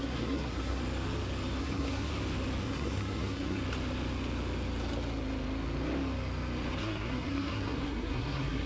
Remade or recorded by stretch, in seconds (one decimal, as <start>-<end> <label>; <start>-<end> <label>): 0.0-0.8 remade; 0.8-1.6 recorded; 1.6-2.1 remade; 2.1-2.6 recorded; 2.6-3.6 remade; 3.6-6.8 recorded; 6.8-8.7 remade